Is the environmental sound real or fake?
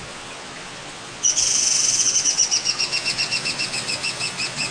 fake